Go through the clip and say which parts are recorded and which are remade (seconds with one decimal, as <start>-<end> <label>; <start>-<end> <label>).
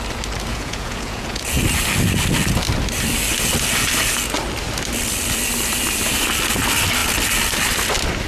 0.0-0.5 recorded; 0.5-1.4 remade; 1.4-8.3 recorded